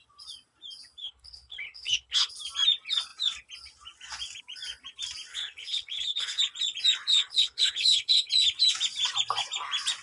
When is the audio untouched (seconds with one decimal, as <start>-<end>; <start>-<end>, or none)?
0.0-1.0; 2.3-5.3; 6.4-7.1; 8.3-10.0